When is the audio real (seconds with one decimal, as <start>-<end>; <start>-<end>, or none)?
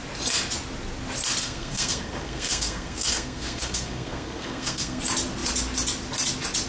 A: 0.0-1.4; 5.0-6.7